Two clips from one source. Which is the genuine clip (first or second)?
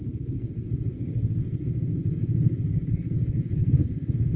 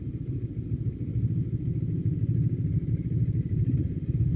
second